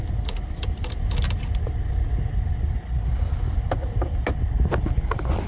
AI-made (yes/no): no